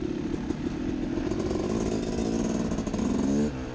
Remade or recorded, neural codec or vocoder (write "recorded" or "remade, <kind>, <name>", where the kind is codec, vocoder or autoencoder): recorded